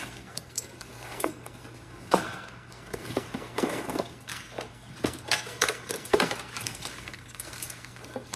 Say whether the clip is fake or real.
fake